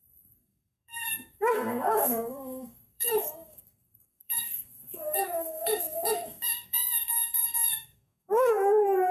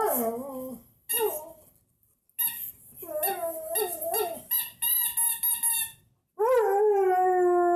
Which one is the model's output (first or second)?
first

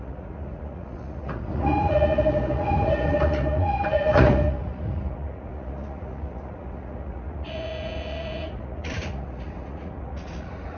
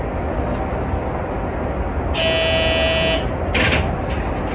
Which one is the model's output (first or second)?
first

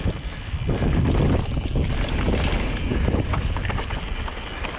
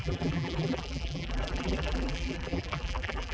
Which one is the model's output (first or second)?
second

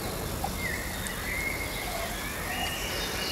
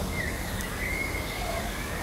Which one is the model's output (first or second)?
second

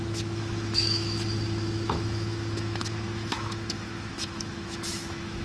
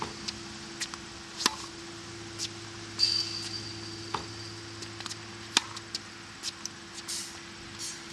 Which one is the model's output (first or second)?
first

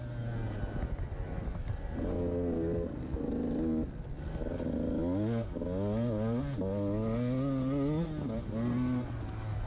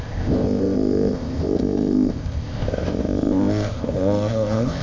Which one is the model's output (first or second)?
second